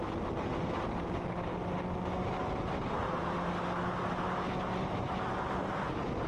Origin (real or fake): real